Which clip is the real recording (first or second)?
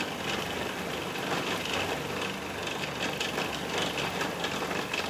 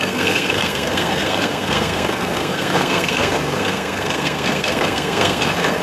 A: first